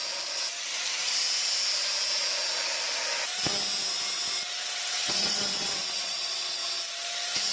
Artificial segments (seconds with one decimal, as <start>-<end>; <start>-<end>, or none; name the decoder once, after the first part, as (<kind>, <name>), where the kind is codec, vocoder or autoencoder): 4.5-6.6 (vocoder, WaveNeXt)